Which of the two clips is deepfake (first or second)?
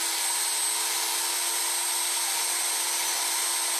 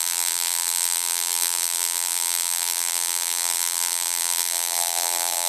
second